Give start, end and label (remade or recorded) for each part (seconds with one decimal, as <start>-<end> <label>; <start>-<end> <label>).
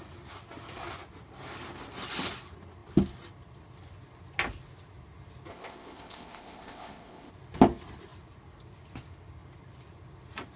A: 0.0-5.5 recorded; 5.5-7.3 remade; 7.3-10.6 recorded